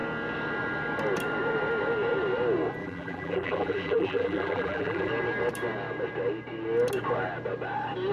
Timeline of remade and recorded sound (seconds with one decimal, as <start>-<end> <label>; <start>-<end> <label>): 0.0-2.8 recorded; 2.8-5.1 remade; 5.1-8.1 recorded